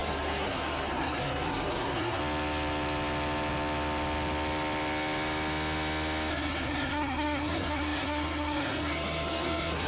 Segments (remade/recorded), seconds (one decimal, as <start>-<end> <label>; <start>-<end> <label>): 0.0-2.2 remade; 2.2-6.3 recorded; 6.3-9.9 remade